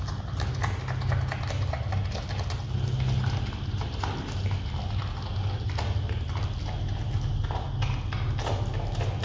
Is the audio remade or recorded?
recorded